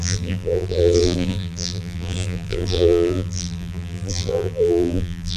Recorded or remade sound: remade